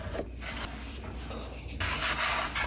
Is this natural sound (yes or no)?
yes